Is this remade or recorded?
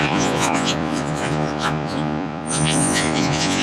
remade